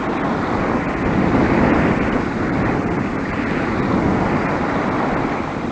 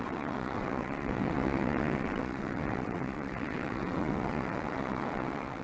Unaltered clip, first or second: first